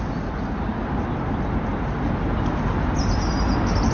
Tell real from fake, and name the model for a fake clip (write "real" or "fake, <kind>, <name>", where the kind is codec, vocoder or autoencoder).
real